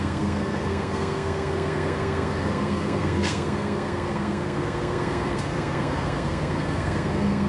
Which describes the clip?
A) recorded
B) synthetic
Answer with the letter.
B